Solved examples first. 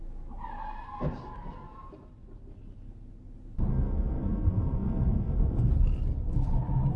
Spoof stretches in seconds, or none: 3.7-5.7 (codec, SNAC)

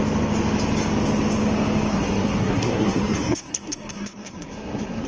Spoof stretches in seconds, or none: 1.9-5.1 (codec, SNAC)

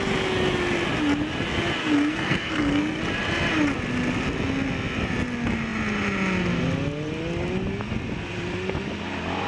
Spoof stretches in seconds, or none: 1.8-3.0 (codec, SNAC)

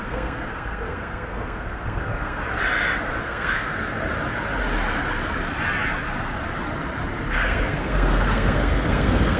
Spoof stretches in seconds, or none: 0.0-2.4 (codec, SNAC); 3.2-3.7; 7.3-9.4

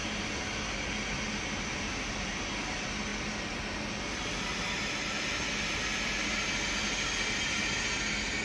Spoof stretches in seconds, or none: none

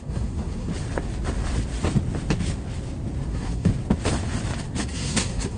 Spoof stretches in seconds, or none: 0.0-0.7 (codec, SNAC); 3.3-3.7; 4.8-5.6

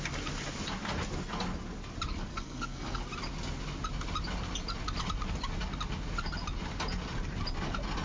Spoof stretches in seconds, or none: 2.3-3.0 (codec, SNAC)